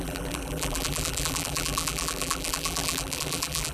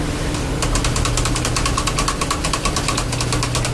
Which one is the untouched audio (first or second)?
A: second